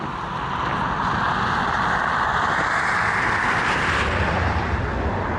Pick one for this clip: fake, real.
real